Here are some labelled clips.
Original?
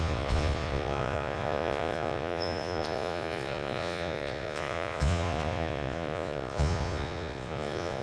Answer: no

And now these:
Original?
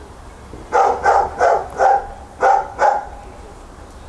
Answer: yes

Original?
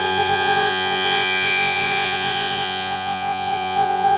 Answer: no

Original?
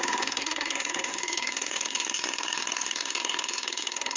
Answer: no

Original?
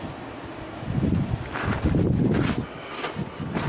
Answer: yes